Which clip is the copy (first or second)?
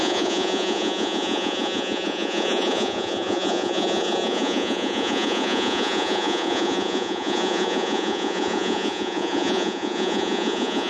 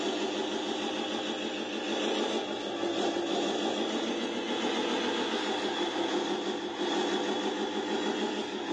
first